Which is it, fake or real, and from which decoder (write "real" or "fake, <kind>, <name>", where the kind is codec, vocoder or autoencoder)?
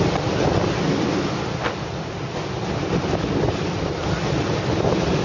real